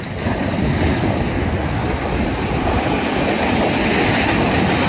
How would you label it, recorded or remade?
recorded